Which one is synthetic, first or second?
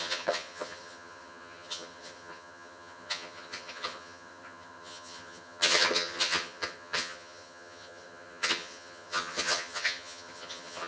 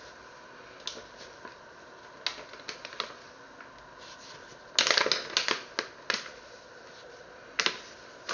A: first